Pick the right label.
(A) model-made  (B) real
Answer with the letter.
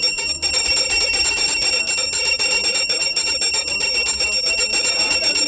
B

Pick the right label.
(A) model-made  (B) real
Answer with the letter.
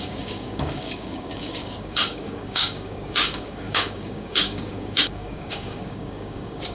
A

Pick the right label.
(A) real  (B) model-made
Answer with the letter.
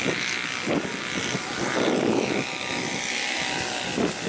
A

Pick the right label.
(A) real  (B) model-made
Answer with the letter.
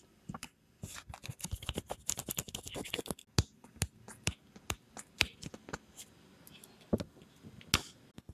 A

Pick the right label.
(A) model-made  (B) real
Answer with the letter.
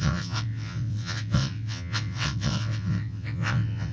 A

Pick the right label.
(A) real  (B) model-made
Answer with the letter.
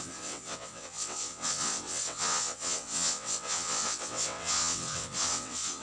B